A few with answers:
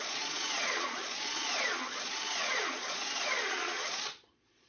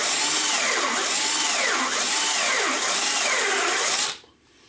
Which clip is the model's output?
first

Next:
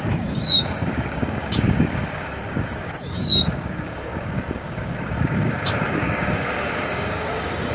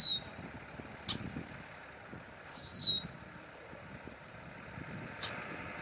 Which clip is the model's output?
first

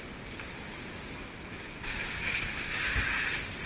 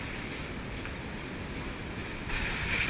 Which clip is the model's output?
second